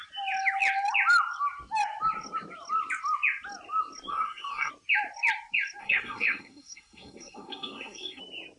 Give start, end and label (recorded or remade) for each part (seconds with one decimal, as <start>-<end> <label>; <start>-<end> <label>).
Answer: 0.0-4.1 recorded; 4.1-4.7 remade; 4.7-5.8 recorded; 5.8-8.2 remade; 8.2-8.6 recorded